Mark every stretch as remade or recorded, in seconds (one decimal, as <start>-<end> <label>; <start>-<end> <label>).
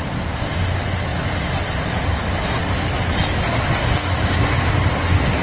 0.0-5.4 recorded